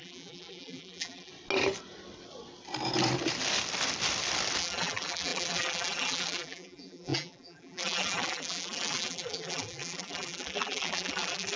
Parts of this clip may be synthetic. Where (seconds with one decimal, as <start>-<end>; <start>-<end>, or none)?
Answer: 0.0-1.3; 4.6-11.6